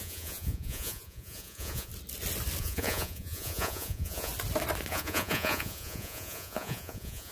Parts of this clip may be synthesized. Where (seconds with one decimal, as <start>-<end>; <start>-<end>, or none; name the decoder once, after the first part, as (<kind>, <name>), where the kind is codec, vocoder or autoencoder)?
0.0-1.9 (vocoder, Vocos); 2.6-4.3; 4.9-7.3